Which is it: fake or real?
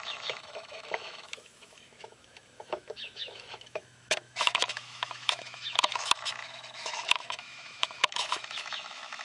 fake